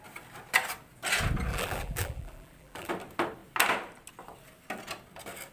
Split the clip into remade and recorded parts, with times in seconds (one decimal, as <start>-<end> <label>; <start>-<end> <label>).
0.0-1.5 recorded; 1.5-2.9 remade; 2.9-5.5 recorded